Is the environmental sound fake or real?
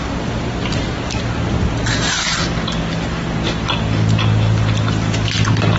real